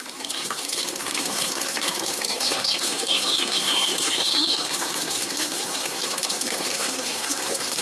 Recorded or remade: remade